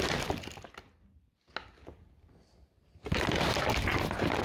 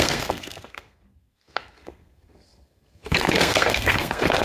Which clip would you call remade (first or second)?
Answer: second